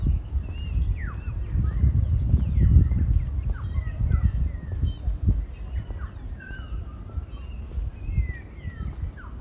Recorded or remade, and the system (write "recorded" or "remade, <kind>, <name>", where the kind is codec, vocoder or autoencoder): recorded